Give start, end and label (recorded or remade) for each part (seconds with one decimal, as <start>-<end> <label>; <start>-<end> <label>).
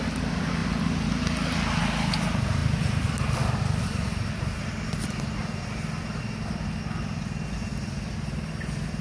0.0-2.6 recorded; 2.6-4.1 remade; 4.1-9.0 recorded